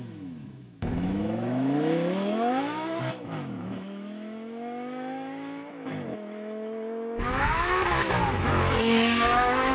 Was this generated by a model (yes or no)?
yes